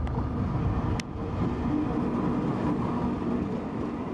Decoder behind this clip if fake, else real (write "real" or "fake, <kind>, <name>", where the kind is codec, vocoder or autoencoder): real